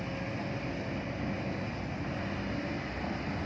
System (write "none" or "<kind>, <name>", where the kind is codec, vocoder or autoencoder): none